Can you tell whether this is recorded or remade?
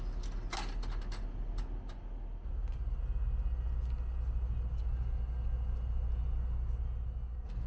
recorded